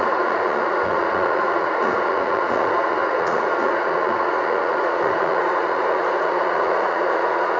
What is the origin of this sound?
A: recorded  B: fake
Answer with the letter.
B